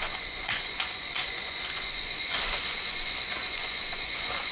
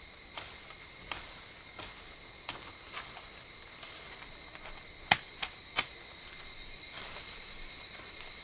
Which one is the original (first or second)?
second